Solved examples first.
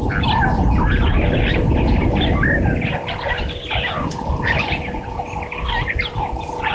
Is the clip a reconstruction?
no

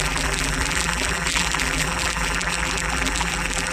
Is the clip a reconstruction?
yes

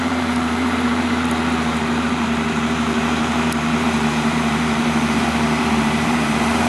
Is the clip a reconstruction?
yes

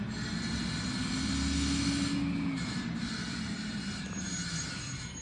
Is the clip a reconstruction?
no